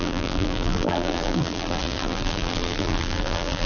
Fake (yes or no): yes